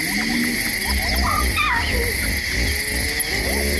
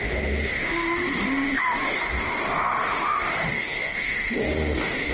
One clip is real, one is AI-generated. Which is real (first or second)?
first